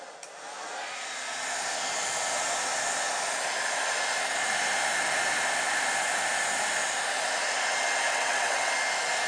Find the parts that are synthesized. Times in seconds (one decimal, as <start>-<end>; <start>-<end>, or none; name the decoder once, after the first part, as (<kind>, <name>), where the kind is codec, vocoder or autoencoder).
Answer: 8.1-8.7 (vocoder, WaveNeXt)

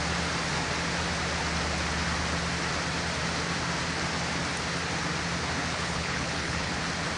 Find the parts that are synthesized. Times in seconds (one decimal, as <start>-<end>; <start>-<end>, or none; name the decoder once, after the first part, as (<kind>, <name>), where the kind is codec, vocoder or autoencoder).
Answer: 5.6-6.7 (codec, HILCodec)

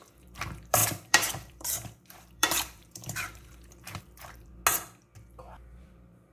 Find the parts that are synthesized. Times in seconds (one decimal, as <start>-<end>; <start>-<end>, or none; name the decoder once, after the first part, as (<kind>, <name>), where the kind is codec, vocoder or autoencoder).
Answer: 0.0-4.6 (vocoder, BigVGAN v2); 5.8-6.3

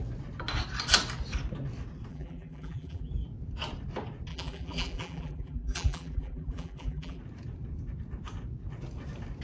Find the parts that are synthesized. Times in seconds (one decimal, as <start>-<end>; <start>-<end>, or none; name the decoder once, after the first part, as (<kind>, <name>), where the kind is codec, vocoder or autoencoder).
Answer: 2.1-3.1 (vocoder, BigVGAN v2); 4.3-7.2

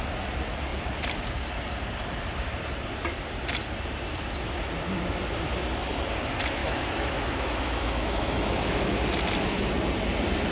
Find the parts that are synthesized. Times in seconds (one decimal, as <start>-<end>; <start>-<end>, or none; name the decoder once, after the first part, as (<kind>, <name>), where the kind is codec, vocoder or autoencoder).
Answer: 6.6-9.0 (autoencoder, DAC-VAE)

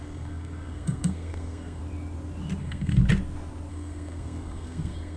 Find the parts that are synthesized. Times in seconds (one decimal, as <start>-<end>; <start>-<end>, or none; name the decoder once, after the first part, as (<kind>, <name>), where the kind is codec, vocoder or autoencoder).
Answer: 0.0-1.8 (codec, SNAC); 2.6-3.0; 3.7-5.2